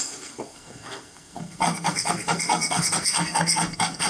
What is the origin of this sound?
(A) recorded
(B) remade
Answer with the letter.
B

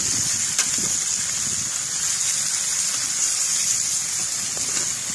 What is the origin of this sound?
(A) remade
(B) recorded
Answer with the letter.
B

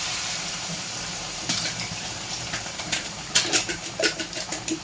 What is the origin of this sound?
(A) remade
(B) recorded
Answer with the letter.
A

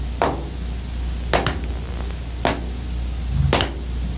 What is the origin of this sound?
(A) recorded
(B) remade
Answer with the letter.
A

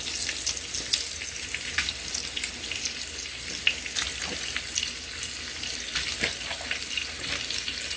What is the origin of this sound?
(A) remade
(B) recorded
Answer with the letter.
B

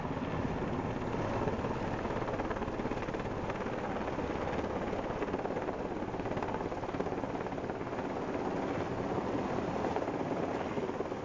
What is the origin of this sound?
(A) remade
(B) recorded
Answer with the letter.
B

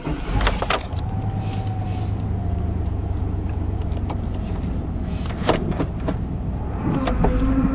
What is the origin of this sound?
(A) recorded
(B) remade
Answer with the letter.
B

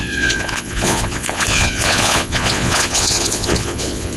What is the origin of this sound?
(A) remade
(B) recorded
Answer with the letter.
A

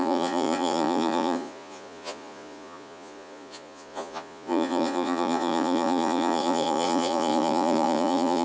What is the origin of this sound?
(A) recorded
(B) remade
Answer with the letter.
B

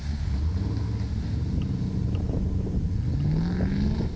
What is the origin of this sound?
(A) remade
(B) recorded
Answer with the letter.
B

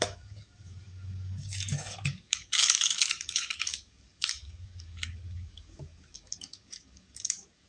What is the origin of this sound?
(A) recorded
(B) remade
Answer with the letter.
B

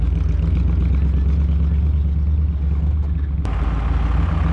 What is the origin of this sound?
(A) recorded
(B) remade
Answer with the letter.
A